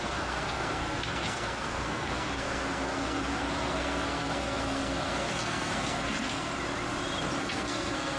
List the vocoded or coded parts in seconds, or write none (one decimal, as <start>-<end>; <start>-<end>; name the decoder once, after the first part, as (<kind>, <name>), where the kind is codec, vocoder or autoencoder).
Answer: 0.0-6.5 (codec, SNAC); 7.4-8.2

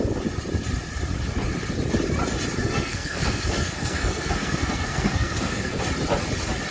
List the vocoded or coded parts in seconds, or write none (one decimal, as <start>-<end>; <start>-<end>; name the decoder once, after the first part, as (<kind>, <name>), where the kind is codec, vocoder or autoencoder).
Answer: 2.6-5.8 (codec, SNAC)

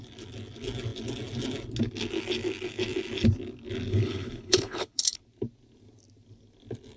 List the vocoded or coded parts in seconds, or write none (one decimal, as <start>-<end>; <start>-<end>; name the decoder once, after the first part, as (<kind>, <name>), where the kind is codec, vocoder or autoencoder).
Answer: 3.9-5.2 (codec, HILCodec)

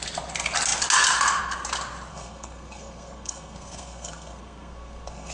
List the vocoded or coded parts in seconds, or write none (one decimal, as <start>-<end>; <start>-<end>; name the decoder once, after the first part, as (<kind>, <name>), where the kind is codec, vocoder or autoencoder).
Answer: 2.1-5.3 (codec, SNAC)

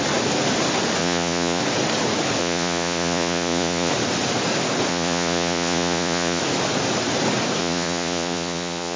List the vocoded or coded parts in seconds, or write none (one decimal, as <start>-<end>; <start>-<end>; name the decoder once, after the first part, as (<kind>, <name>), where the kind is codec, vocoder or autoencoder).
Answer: 1.0-1.6 (vocoder, Vocos); 2.4-3.9; 4.9-6.4; 7.6-9.0